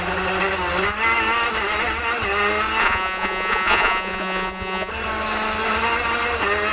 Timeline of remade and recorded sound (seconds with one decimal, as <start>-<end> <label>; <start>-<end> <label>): 0.0-2.8 recorded; 2.8-4.9 remade; 4.9-6.7 recorded